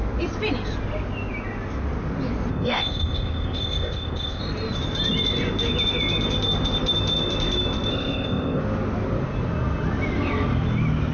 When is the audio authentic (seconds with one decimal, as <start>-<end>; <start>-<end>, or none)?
0.0-2.5; 4.4-7.9; 8.6-11.1